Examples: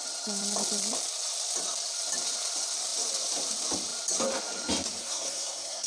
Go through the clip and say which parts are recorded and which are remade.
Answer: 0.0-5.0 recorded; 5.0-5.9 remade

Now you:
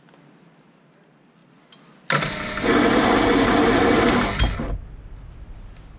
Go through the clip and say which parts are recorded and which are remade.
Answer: 0.0-6.0 recorded

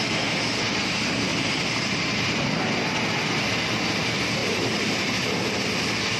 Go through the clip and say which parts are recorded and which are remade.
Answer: 0.0-1.3 recorded; 1.3-2.5 remade; 2.5-4.4 recorded; 4.4-5.3 remade; 5.3-6.2 recorded

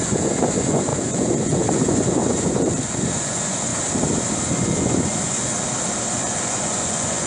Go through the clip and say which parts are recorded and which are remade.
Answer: 0.0-3.7 remade; 3.7-4.5 recorded; 4.5-5.5 remade; 5.5-6.1 recorded; 6.1-7.3 remade

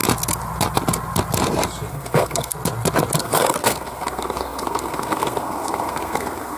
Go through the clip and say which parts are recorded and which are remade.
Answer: 0.0-1.9 recorded; 1.9-2.5 remade; 2.5-3.2 recorded; 3.2-6.6 remade